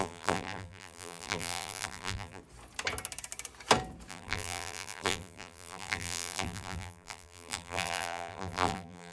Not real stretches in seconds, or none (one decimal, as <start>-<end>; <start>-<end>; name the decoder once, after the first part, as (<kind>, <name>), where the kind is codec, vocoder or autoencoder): 0.0-2.4 (vocoder, BigVGAN v2); 4.1-9.1